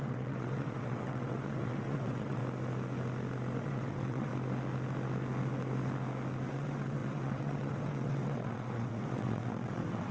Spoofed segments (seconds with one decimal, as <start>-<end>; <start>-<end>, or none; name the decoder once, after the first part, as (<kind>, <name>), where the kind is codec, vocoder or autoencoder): 0.0-2.4 (vocoder, WaveNeXt); 3.6-4.3; 6.5-10.1